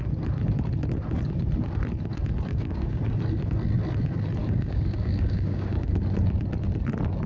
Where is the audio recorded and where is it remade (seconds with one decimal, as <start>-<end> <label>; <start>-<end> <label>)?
0.0-2.5 recorded; 2.5-3.0 remade; 3.0-4.4 recorded; 4.4-6.0 remade; 6.0-7.3 recorded